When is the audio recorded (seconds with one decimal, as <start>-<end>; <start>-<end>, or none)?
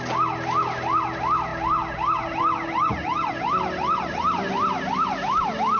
0.0-5.8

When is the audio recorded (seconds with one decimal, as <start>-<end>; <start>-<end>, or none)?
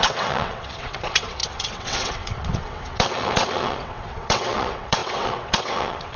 none